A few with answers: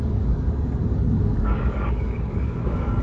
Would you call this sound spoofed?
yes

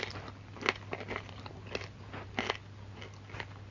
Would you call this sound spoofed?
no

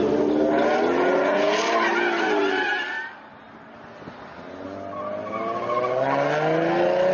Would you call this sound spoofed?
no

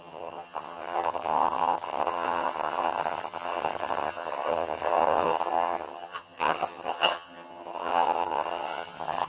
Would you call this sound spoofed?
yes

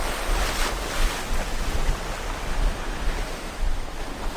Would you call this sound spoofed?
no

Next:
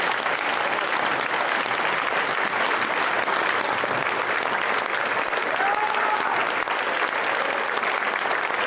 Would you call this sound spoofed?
no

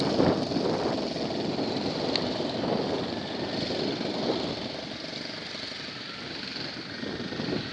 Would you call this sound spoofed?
no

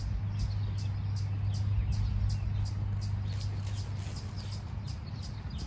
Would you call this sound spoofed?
no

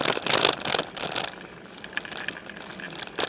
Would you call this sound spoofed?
no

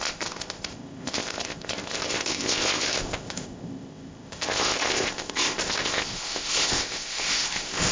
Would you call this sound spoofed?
yes